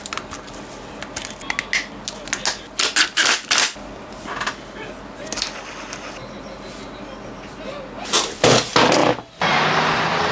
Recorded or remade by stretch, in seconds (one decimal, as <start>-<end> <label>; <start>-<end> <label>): 0.0-10.3 recorded

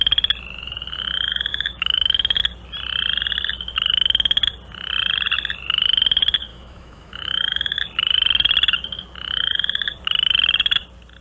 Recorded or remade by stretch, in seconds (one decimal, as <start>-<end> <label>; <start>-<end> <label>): 0.0-1.5 recorded; 1.5-2.4 remade; 2.4-6.5 recorded; 6.5-7.8 remade; 7.8-11.2 recorded

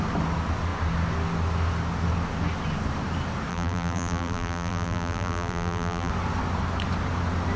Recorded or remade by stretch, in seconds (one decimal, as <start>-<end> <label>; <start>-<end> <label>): 0.0-3.5 recorded; 3.5-6.1 remade; 6.1-7.6 recorded

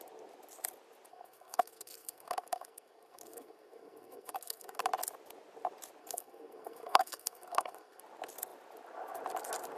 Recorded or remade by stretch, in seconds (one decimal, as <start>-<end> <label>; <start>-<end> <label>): 0.0-1.1 recorded; 1.1-4.8 remade; 4.8-6.0 recorded; 6.0-8.0 remade; 8.0-9.8 recorded

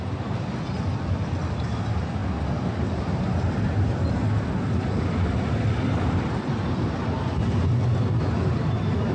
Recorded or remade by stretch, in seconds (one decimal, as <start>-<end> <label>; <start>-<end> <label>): 0.0-9.1 recorded

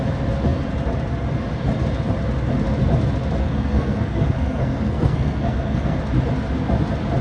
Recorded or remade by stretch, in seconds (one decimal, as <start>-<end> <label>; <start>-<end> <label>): 0.0-3.4 recorded; 3.4-6.0 remade; 6.0-7.2 recorded

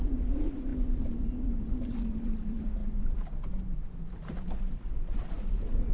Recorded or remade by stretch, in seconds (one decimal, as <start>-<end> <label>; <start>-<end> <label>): 0.0-5.9 recorded

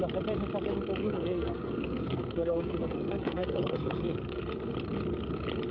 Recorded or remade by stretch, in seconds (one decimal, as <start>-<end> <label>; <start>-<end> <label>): 0.0-1.0 recorded; 1.0-4.4 remade; 4.4-5.7 recorded